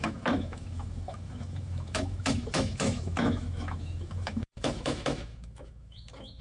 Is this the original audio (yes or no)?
no